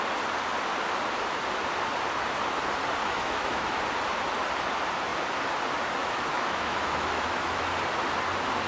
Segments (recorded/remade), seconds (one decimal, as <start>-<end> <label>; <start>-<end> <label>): 0.0-3.0 recorded; 3.0-3.8 remade; 3.8-6.0 recorded; 6.0-7.7 remade; 7.7-8.7 recorded